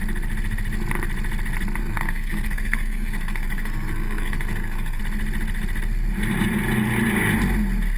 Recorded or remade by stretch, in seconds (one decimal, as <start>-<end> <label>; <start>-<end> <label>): 0.0-1.8 recorded; 1.8-5.0 remade; 5.0-8.0 recorded